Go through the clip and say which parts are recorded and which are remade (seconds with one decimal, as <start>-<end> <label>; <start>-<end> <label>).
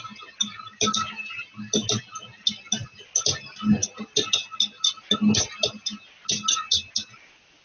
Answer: 0.0-7.6 recorded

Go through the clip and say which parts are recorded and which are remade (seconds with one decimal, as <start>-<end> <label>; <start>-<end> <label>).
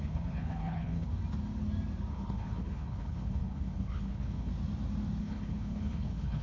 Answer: 0.0-1.1 remade; 1.1-2.1 recorded; 2.1-4.5 remade; 4.5-5.2 recorded; 5.2-6.4 remade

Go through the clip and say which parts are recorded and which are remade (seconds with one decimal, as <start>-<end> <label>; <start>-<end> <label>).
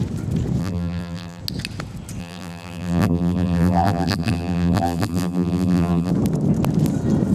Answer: 0.0-0.6 recorded; 0.6-1.4 remade; 1.4-2.2 recorded; 2.2-6.1 remade; 6.1-7.3 recorded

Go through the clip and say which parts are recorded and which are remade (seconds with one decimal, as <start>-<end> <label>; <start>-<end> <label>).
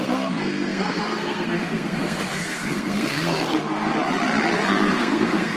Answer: 0.0-3.9 remade; 3.9-4.7 recorded; 4.7-5.6 remade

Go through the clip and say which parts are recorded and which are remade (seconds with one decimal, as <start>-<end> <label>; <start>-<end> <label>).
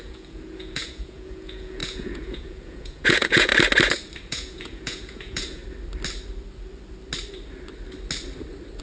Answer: 0.0-3.5 remade; 3.5-4.2 recorded; 4.2-5.6 remade; 5.6-8.8 recorded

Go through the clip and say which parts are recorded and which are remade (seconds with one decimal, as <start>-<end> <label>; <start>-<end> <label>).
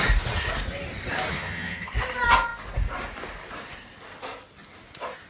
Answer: 0.0-1.3 recorded; 1.3-1.9 remade; 1.9-5.3 recorded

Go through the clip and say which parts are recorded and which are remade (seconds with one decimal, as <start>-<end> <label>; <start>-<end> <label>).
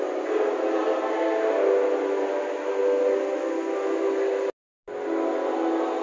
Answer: 0.0-6.0 recorded